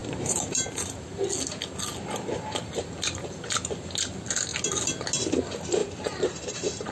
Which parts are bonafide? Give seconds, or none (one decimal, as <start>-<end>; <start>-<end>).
1.2-5.8